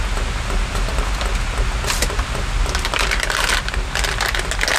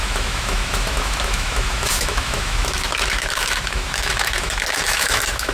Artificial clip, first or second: second